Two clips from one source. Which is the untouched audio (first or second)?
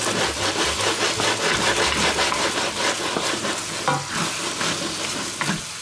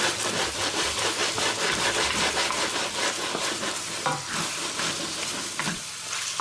first